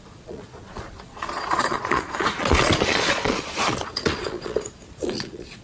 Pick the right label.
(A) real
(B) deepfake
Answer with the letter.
B